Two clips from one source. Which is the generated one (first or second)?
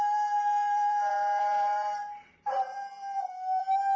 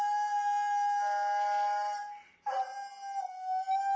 first